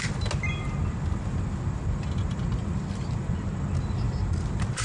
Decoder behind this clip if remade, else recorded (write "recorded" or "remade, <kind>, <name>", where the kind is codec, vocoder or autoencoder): recorded